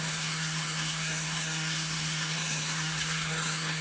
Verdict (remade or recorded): remade